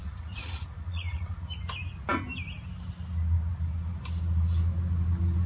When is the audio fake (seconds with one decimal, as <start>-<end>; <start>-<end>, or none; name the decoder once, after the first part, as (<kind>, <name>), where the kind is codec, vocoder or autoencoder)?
0.0-1.4 (vocoder, Vocos)